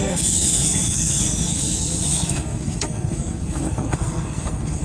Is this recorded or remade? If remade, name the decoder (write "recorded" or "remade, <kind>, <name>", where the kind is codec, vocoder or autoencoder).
remade, codec, SNAC